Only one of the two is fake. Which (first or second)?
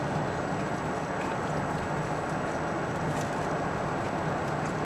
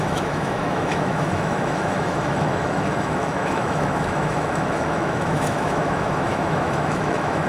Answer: second